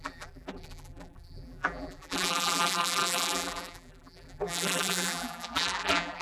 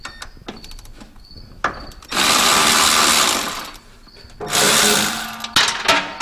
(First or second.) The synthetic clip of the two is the first